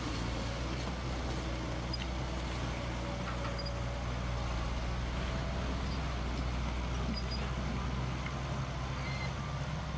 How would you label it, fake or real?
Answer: real